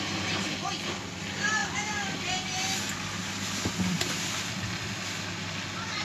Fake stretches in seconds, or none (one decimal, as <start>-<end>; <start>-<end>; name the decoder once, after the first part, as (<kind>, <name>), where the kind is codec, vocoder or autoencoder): none